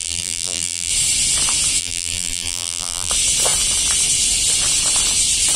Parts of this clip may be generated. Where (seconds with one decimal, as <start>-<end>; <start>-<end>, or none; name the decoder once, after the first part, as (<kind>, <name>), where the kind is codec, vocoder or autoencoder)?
0.0-0.9 (vocoder, BigVGAN v2); 1.8-3.1